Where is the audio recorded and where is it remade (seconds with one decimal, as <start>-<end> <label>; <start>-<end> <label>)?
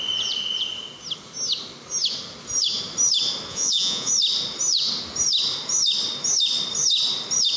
0.0-3.5 recorded; 3.5-4.1 remade; 4.1-7.6 recorded